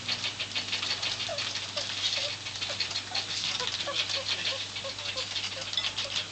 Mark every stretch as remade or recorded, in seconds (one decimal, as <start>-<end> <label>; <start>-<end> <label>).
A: 0.0-6.3 recorded